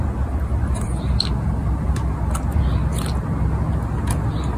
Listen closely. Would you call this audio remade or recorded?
recorded